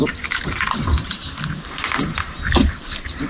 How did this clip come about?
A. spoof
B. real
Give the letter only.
B